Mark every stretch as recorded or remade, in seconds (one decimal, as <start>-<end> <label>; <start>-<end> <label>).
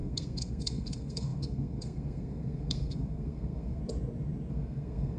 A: 0.0-3.8 remade; 3.8-4.5 recorded; 4.5-5.2 remade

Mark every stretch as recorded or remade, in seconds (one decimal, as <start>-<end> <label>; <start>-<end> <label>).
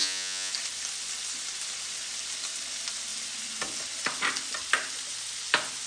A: 0.0-0.5 remade; 0.5-5.9 recorded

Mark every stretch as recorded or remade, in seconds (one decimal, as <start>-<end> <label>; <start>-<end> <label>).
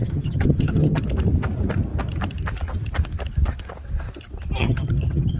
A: 0.0-1.0 remade; 1.0-4.6 recorded; 4.6-5.4 remade